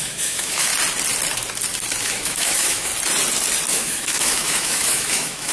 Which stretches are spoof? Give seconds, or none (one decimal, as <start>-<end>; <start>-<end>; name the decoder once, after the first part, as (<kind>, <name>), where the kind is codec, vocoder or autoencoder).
0.0-0.7 (autoencoder, DAC-VAE); 2.0-2.9; 3.7-5.5